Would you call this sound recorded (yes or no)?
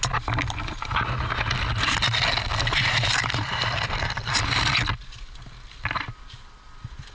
yes